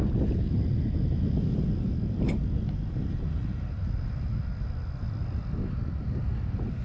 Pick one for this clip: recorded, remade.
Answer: recorded